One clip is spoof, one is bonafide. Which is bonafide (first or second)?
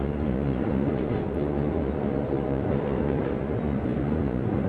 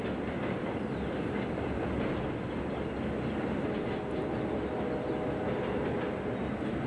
second